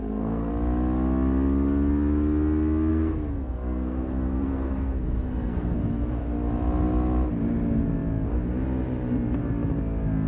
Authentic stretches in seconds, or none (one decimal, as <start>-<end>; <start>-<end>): 0.5-2.9; 6.2-10.3